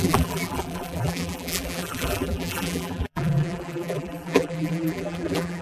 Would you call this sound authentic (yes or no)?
no